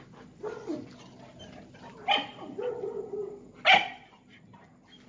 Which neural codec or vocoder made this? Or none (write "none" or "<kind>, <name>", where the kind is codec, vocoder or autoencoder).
none